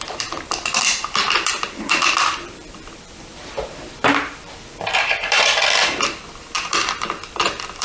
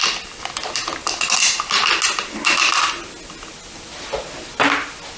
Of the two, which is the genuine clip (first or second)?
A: second